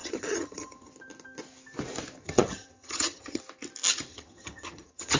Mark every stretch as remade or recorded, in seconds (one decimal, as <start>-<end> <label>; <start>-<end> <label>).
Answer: 0.0-0.9 remade; 0.9-2.2 recorded; 2.2-3.4 remade; 3.4-4.1 recorded; 4.1-5.2 remade